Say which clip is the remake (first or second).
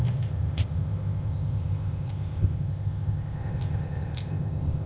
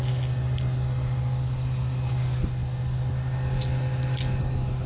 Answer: first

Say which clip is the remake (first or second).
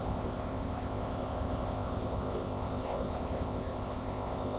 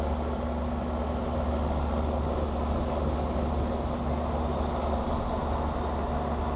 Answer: first